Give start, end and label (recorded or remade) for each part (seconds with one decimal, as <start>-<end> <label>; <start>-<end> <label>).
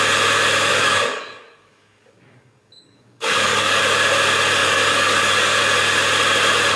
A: 0.0-0.7 recorded; 0.7-3.8 remade; 3.8-4.6 recorded; 4.6-5.6 remade; 5.6-6.8 recorded